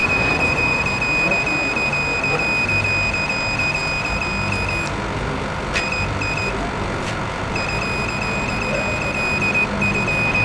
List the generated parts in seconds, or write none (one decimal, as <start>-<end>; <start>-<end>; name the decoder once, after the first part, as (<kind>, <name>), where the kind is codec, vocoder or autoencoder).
0.0-0.8 (vocoder, Vocos)